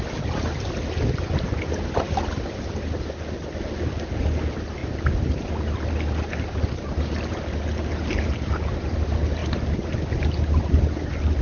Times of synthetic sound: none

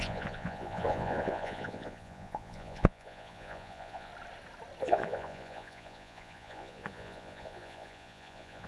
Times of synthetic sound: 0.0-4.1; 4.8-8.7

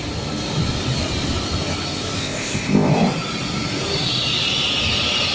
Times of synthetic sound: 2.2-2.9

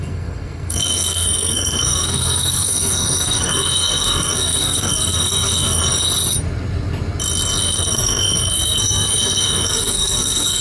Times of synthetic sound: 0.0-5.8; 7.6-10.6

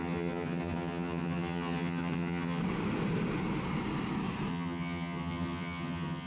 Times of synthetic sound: 0.0-2.6; 4.5-6.3

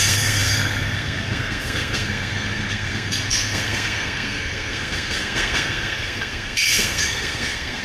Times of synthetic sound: 0.0-7.8

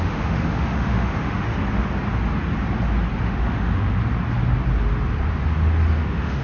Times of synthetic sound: 0.0-1.6; 3.2-4.0; 6.0-6.4